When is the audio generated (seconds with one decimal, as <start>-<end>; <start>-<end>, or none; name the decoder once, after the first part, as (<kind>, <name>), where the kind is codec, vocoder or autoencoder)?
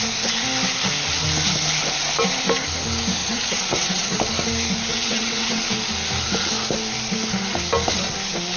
3.2-4.2 (vocoder, WaveNeXt); 4.9-5.7